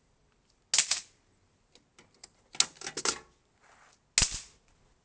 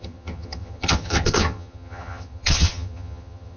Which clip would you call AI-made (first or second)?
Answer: second